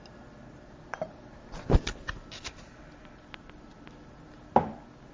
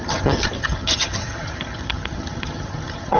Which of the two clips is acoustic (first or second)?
first